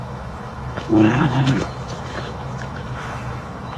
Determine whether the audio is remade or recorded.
remade